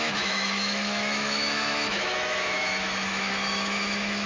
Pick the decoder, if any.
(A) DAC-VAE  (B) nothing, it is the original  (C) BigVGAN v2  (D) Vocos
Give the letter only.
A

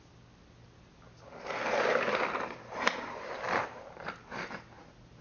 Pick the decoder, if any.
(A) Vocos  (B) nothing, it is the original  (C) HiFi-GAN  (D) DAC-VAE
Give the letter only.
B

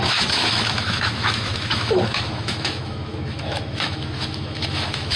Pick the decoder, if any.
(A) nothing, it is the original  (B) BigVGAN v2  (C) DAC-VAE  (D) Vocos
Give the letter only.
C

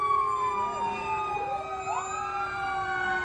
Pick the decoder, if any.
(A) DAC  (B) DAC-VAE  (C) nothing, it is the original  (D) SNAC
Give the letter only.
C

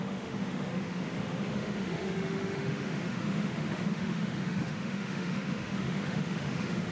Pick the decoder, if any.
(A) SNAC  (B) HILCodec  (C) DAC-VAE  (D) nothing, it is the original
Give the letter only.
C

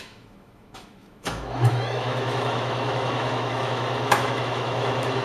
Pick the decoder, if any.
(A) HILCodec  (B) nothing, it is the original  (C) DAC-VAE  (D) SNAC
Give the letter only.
C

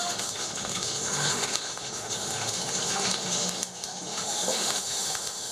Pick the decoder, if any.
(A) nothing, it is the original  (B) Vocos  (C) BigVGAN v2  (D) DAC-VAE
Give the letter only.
D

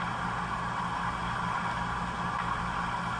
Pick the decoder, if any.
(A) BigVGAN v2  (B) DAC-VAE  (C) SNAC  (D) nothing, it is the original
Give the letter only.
D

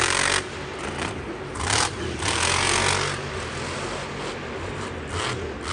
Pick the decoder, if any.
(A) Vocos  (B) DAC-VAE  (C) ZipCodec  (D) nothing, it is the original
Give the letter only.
D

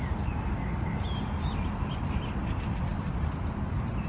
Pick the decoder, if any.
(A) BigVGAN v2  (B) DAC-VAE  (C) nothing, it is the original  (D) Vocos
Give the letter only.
C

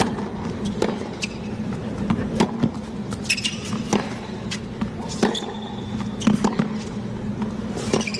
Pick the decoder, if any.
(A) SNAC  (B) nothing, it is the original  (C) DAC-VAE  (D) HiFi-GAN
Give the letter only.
B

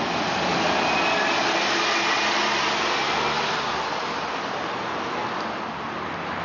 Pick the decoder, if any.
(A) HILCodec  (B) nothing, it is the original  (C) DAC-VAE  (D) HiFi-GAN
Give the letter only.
B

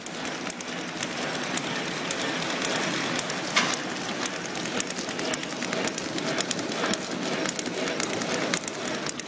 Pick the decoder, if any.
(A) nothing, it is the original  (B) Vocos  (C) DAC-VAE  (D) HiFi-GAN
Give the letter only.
A